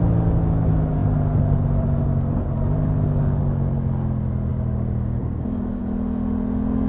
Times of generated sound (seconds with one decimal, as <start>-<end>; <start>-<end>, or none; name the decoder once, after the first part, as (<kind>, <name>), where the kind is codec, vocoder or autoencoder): 4.5-5.8 (codec, DAC)